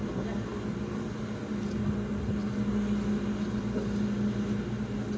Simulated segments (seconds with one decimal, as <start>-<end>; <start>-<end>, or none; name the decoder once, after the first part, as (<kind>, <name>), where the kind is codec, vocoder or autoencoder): none